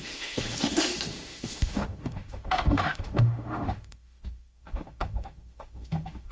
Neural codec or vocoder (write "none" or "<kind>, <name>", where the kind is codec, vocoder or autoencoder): autoencoder, DAC-VAE